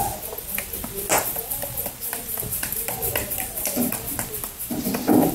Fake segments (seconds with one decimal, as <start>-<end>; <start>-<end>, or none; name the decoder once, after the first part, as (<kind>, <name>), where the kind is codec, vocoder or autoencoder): 2.0-5.3 (vocoder, BigVGAN v2)